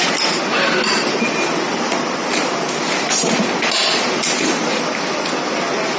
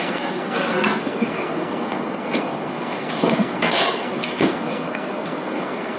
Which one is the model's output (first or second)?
second